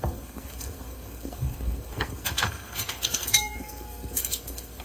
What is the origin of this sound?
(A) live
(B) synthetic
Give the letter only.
B